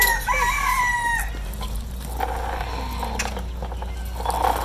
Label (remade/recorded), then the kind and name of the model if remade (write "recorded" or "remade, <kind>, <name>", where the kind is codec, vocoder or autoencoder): recorded